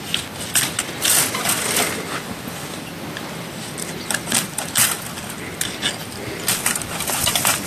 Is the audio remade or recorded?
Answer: recorded